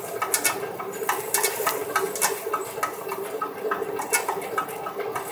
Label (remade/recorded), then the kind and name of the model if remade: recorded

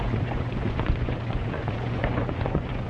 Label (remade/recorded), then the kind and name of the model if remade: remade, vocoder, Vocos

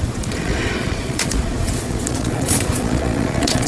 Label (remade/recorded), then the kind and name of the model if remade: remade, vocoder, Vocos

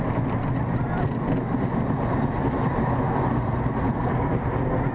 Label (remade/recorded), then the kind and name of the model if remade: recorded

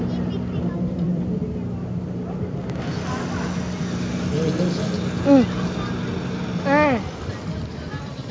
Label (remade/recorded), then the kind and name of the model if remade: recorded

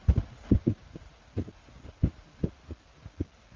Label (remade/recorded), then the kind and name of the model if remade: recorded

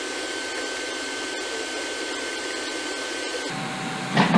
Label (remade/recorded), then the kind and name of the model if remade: recorded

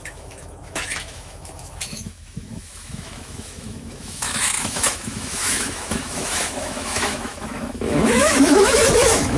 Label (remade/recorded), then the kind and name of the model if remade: remade, autoencoder, DAC-VAE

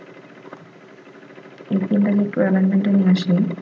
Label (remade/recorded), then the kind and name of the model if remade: recorded